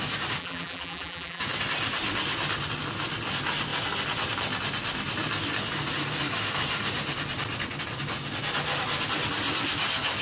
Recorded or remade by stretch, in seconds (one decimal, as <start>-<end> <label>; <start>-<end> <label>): 0.0-0.4 recorded; 0.4-1.4 remade; 1.4-10.2 recorded